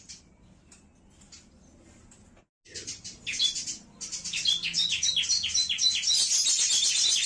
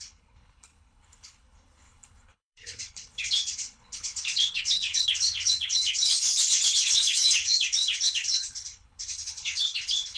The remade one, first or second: second